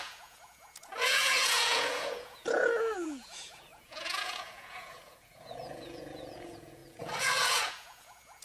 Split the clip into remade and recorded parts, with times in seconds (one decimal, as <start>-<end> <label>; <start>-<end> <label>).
0.0-8.4 remade